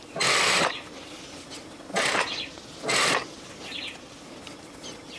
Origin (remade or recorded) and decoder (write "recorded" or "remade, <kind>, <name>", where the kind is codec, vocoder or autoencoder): recorded